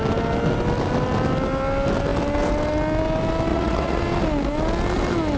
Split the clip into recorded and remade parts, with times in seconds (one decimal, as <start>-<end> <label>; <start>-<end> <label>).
0.0-3.5 recorded; 3.5-4.0 remade; 4.0-5.4 recorded